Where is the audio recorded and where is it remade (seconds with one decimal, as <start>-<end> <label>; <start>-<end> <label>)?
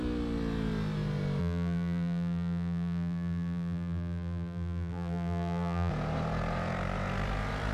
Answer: 0.0-1.4 recorded; 1.4-5.9 remade; 5.9-7.7 recorded